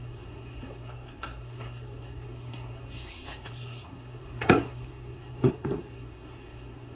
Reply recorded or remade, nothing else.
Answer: remade